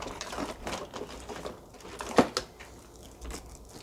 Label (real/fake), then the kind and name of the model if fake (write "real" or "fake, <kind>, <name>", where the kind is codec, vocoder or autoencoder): real